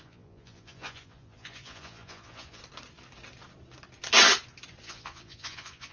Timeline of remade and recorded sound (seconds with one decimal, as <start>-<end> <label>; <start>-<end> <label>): 0.0-2.6 remade; 2.6-4.8 recorded; 4.8-5.9 remade